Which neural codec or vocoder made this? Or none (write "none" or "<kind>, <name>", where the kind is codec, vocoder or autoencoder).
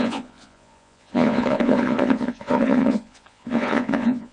vocoder, Vocos